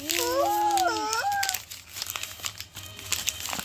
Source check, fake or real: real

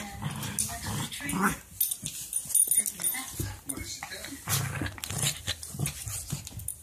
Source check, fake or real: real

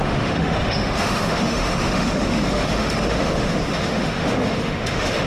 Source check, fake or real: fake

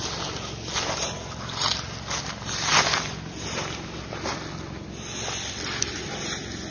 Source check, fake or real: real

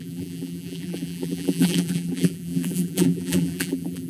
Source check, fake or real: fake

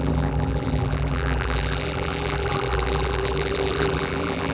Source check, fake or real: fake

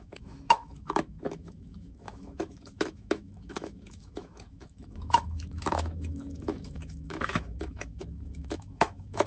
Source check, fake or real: fake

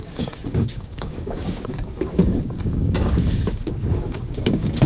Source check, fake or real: fake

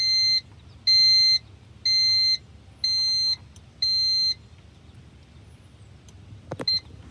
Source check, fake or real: real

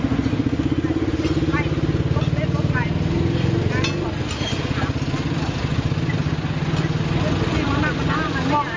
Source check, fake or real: real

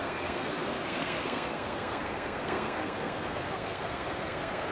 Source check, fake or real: fake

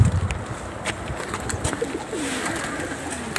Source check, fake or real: real